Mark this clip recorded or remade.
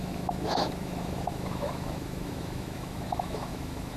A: remade